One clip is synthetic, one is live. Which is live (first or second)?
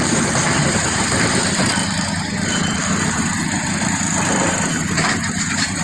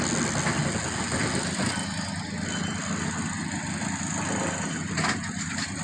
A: second